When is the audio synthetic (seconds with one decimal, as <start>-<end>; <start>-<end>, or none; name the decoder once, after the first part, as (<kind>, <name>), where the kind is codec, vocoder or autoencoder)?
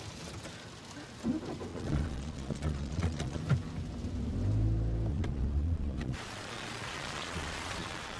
1.7-3.4 (vocoder, Vocos); 5.1-8.2